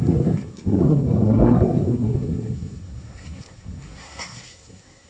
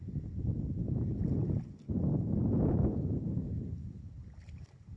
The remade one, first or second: first